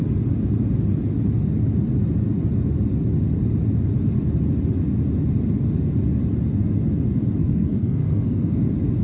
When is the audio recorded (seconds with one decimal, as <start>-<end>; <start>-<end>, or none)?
0.0-7.4; 8.6-9.0